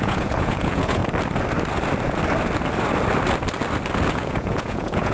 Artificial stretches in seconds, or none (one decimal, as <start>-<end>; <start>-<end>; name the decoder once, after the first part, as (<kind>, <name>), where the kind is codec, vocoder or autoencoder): 0.0-1.0 (vocoder, Vocos); 4.1-5.1